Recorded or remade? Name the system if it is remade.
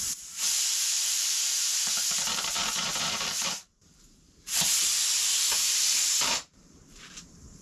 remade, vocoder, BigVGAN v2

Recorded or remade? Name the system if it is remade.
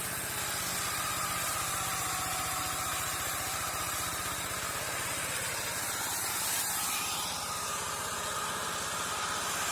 recorded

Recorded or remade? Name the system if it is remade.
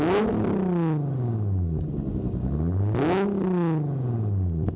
recorded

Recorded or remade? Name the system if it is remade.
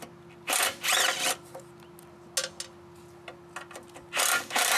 recorded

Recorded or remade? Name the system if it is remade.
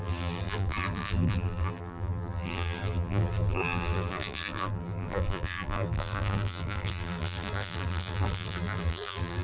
remade, vocoder, BigVGAN v2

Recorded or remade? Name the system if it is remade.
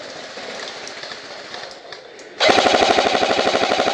recorded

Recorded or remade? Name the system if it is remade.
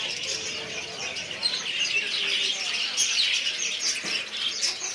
remade, vocoder, BigVGAN v2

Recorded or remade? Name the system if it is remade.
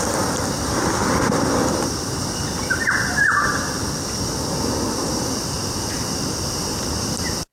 remade, vocoder, BigVGAN v2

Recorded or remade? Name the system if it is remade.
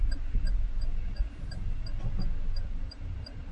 recorded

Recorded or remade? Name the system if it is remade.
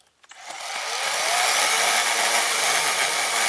recorded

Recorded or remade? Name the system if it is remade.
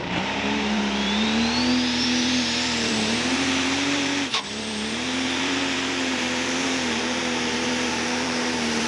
remade, vocoder, BigVGAN v2